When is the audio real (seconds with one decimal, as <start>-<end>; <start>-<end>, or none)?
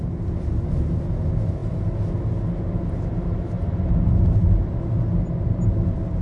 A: 0.0-6.2